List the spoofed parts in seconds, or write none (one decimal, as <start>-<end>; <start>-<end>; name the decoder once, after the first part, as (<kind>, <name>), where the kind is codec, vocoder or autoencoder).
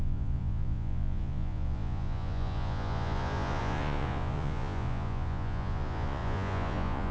0.0-7.1 (vocoder, Vocos)